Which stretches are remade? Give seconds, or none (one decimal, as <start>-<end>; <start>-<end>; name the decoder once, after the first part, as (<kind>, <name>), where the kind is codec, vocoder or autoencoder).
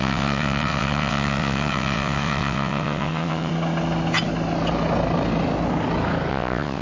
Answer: 0.0-3.5 (vocoder, WaveNeXt); 6.3-6.8